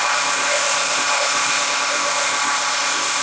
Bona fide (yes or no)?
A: no